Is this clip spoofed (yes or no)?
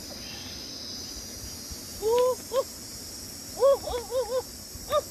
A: no